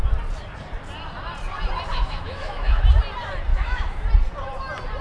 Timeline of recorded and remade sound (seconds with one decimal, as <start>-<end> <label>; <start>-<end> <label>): 0.0-1.9 recorded; 1.9-2.8 remade; 2.8-3.5 recorded; 3.5-4.0 remade; 4.0-5.0 recorded